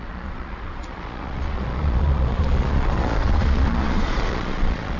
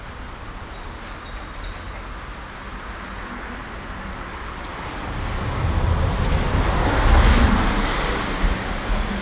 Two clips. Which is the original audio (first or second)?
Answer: second